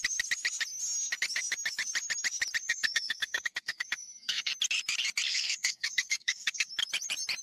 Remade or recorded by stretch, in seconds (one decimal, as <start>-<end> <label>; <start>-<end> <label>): 0.0-2.6 recorded; 2.6-4.5 remade; 4.5-5.3 recorded; 5.3-6.7 remade; 6.7-7.4 recorded